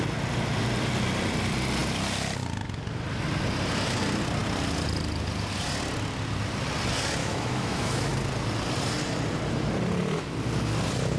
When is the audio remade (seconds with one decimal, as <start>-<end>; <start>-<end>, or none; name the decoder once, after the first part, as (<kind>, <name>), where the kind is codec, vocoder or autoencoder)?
7.2-8.1 (autoencoder, DAC-VAE)